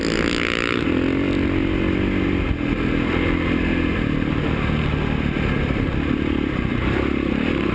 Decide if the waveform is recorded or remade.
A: recorded